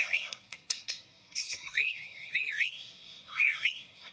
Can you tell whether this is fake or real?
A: fake